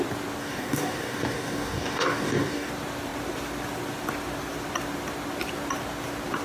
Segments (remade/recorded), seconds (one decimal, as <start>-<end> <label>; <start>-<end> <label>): 0.0-0.4 recorded; 0.4-2.7 remade; 2.7-6.4 recorded